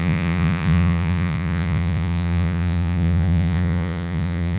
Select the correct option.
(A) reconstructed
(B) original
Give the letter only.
A